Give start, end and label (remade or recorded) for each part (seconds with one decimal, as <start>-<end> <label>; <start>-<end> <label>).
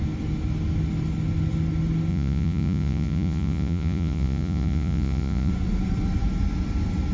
0.0-2.1 recorded; 2.1-5.5 remade; 5.5-7.1 recorded